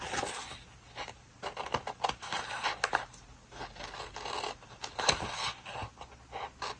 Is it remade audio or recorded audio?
recorded